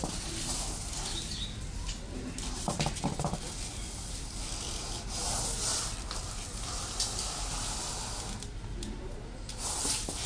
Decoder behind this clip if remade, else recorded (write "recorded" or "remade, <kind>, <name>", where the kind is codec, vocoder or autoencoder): recorded